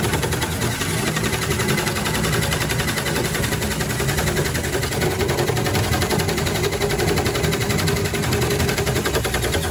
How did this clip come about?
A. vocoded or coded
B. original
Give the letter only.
B